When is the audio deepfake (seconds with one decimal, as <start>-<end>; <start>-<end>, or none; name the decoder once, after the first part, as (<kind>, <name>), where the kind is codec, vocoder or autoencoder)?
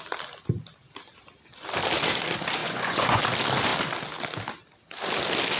2.6-3.2 (vocoder, Vocos)